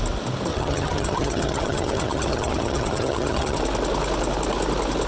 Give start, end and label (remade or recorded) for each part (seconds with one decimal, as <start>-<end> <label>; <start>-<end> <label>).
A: 0.0-0.5 recorded; 0.5-3.6 remade; 3.6-5.1 recorded